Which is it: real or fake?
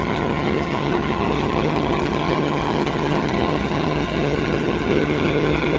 fake